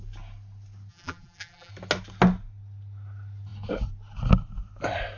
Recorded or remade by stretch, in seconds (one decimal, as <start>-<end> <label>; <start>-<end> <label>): 0.0-0.9 recorded; 0.9-1.7 remade; 1.7-5.2 recorded